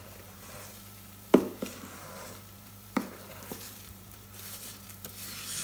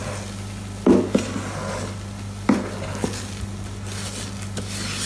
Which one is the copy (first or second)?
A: first